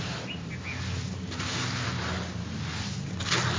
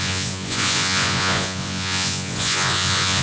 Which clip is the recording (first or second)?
first